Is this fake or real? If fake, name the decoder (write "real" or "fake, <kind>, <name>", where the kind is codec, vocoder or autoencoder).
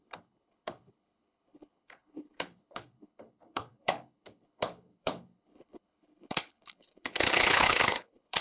fake, codec, HILCodec